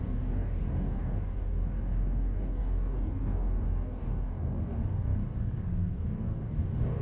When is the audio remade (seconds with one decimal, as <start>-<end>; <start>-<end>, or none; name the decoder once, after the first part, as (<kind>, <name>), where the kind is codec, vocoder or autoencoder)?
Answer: 0.0-7.0 (codec, DAC)